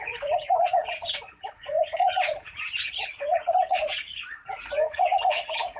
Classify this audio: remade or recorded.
remade